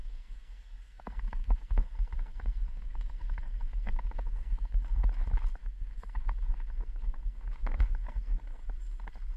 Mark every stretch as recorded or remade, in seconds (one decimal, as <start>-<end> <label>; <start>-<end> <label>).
0.0-5.0 remade; 5.0-5.6 recorded; 5.6-8.6 remade; 8.6-9.4 recorded